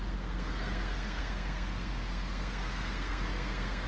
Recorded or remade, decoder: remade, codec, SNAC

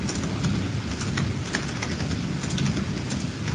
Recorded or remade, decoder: recorded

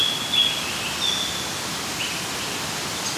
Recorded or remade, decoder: recorded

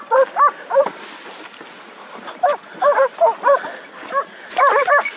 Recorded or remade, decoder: recorded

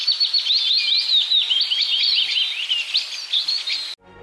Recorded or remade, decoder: recorded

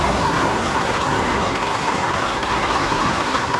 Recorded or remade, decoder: remade, codec, SNAC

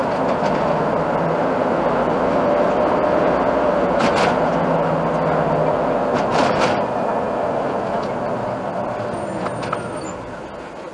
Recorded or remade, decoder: recorded